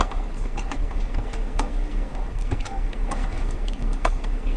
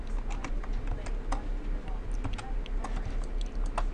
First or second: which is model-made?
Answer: first